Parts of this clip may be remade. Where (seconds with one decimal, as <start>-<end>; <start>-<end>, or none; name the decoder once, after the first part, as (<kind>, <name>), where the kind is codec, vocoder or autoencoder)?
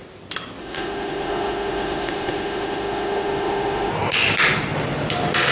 0.6-3.9 (autoencoder, DAC-VAE)